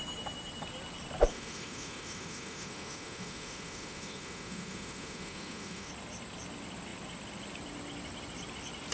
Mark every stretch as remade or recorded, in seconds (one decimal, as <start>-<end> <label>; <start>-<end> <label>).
0.0-1.3 recorded; 1.3-5.9 remade; 5.9-8.9 recorded